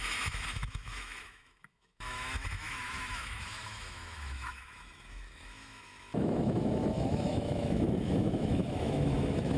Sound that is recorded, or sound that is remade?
remade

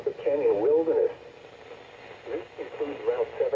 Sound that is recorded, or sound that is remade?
recorded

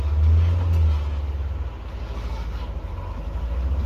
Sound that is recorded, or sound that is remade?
recorded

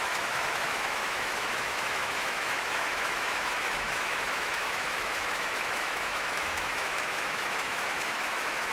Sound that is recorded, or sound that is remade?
remade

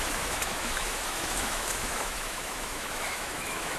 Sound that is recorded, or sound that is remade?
remade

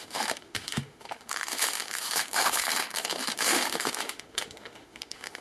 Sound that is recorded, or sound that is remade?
remade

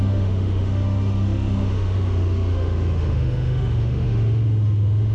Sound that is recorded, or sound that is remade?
remade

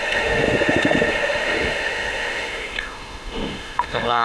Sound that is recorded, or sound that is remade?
remade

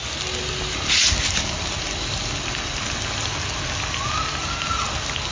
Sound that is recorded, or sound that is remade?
recorded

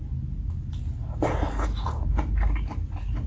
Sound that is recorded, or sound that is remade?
recorded